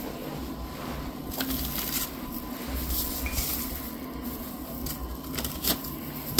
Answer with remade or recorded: recorded